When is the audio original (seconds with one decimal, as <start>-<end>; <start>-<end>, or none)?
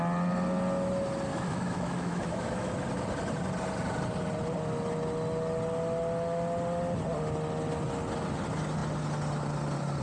0.0-1.3; 2.7-10.0